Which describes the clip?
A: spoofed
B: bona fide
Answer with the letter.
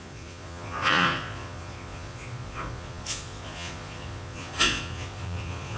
A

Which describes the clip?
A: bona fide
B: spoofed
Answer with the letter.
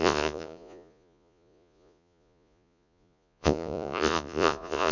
B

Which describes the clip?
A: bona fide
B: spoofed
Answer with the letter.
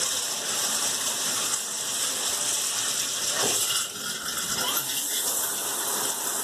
A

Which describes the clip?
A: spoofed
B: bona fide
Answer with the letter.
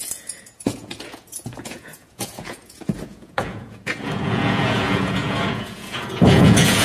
A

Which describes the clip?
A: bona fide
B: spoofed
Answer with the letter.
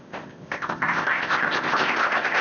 B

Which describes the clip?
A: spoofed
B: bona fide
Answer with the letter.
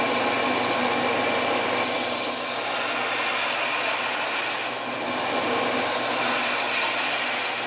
B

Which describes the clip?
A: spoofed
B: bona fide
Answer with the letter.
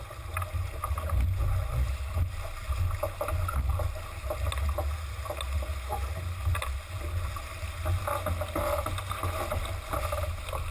B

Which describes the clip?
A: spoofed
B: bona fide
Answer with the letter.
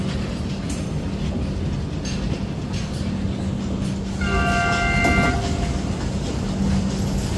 B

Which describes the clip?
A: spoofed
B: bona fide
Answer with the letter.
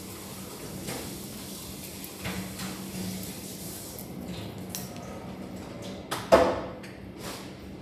B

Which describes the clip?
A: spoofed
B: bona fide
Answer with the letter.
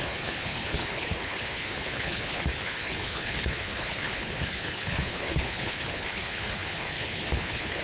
A